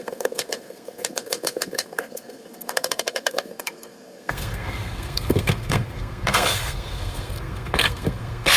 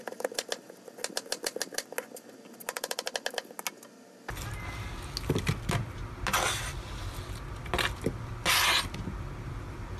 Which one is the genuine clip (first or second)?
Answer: second